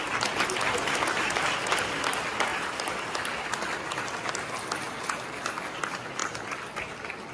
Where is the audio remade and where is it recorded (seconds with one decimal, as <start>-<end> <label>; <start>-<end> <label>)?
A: 0.0-2.5 recorded; 2.5-3.9 remade; 3.9-6.2 recorded; 6.2-7.3 remade